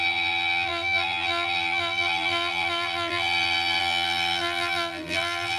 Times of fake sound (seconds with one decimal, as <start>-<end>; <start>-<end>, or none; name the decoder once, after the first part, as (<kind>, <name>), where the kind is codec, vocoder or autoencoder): 0.0-5.6 (vocoder, BigVGAN v2)